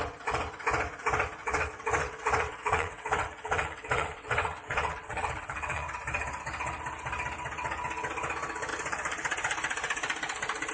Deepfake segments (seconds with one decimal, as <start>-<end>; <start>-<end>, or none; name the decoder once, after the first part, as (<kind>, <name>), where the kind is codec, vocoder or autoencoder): 1.4-5.9 (vocoder, WaveNeXt)